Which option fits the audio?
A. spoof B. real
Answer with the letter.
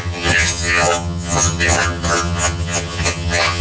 A